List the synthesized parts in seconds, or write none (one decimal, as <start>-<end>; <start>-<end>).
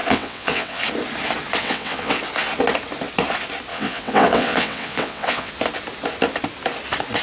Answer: 0.0-0.8; 1.6-2.2; 3.7-5.5